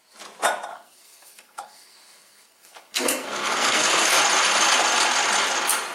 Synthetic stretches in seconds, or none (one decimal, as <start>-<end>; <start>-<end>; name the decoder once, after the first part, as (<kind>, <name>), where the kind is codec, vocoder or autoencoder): 0.7-4.2 (codec, SNAC)